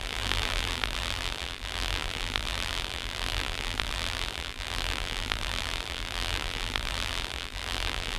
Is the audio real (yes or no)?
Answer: no